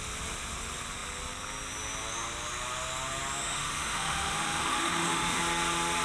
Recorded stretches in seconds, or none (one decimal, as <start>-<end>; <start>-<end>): 0.0-3.4; 5.4-6.0